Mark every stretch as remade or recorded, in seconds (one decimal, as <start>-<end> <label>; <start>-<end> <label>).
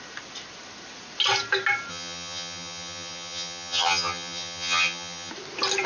0.0-1.9 recorded; 1.9-5.3 remade; 5.3-5.9 recorded